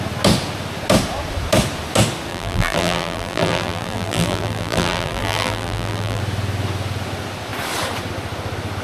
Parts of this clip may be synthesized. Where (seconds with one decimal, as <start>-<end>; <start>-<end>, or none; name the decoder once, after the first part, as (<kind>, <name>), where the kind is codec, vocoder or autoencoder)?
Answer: 2.3-6.2 (vocoder, BigVGAN v2)